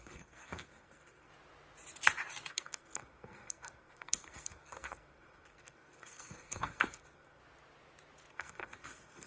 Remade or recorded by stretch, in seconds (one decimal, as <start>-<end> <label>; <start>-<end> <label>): 0.0-1.3 remade; 1.3-2.5 recorded; 2.5-7.4 remade; 7.4-8.3 recorded; 8.3-9.3 remade

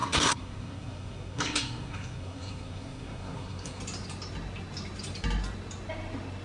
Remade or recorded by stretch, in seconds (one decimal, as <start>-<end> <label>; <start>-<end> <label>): 0.0-3.8 remade; 3.8-6.4 recorded

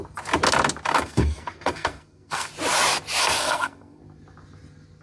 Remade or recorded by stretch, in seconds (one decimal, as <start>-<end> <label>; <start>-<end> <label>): 0.0-0.9 recorded; 0.9-2.5 remade; 2.5-3.2 recorded; 3.2-4.0 remade; 4.0-5.0 recorded

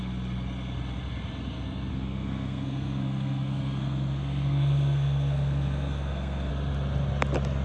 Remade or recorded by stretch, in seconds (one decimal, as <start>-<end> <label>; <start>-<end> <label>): 0.0-1.9 recorded; 1.9-6.5 remade; 6.5-7.6 recorded

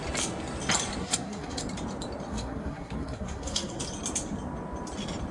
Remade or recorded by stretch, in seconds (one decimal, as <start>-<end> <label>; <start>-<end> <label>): 0.0-1.0 recorded; 1.0-1.6 remade; 1.6-2.3 recorded; 2.3-3.8 remade; 3.8-5.3 recorded

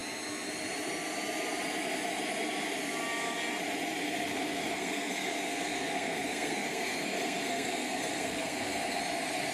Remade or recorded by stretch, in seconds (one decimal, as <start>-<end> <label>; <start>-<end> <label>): 0.0-4.0 recorded; 4.0-9.0 remade; 9.0-9.5 recorded

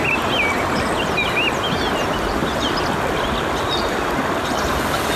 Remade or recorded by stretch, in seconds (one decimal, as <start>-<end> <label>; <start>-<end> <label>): 0.0-5.2 recorded

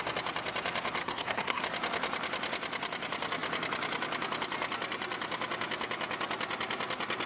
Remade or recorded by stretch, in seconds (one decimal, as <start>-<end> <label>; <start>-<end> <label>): 0.0-1.0 recorded; 1.0-1.6 remade; 1.6-7.3 recorded